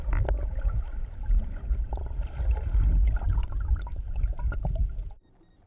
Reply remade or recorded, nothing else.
recorded